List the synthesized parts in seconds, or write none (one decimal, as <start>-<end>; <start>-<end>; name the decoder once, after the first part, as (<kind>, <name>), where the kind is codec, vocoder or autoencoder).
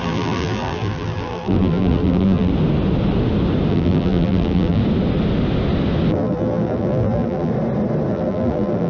0.0-2.5 (vocoder, BigVGAN v2); 3.7-4.8; 6.1-7.5; 8.1-8.9